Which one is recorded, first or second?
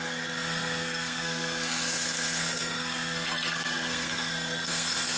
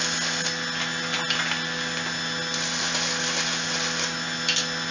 second